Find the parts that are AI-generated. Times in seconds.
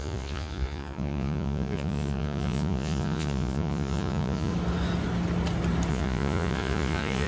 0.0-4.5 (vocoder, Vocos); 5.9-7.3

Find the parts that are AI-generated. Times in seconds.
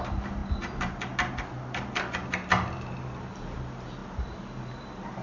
none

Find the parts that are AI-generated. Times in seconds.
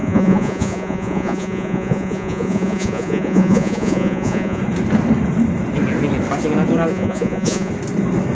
0.0-4.6 (vocoder, Vocos); 6.9-7.7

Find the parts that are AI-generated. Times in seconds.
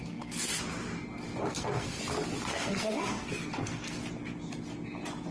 0.0-0.5 (codec, SNAC); 1.4-2.0; 2.5-4.0